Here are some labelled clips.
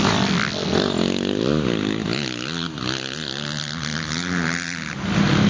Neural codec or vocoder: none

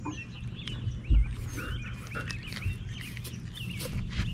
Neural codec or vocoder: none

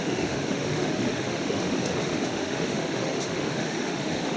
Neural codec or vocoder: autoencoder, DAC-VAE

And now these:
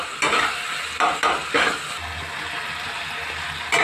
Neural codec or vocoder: none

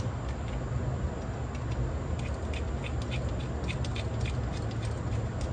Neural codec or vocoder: none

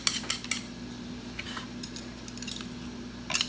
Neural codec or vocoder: none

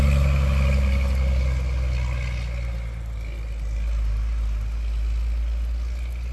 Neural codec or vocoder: none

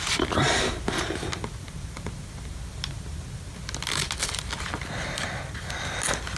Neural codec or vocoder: none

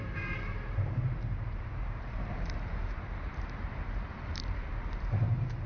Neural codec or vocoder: vocoder, BigVGAN v2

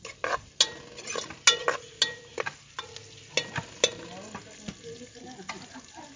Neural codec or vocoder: none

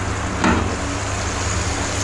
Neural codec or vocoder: none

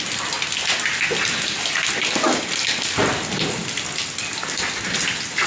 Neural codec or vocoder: none